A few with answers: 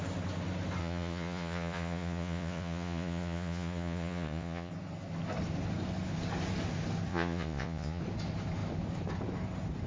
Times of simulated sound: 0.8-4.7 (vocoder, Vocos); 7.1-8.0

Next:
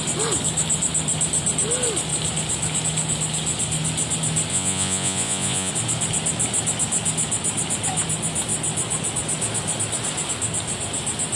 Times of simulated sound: 4.5-5.7 (vocoder, Vocos)

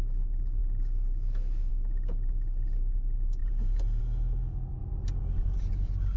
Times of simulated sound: 3.4-4.0 (vocoder, Vocos)